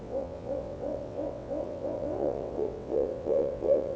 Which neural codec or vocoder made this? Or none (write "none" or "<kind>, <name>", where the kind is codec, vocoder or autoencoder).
vocoder, WaveNeXt